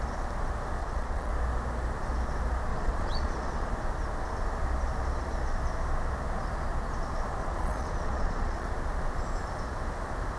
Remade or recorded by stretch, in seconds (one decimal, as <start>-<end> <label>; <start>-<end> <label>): 0.0-0.8 recorded; 0.8-1.3 remade; 1.3-2.7 recorded; 2.7-3.7 remade; 3.7-7.4 recorded; 7.4-8.7 remade; 8.7-10.4 recorded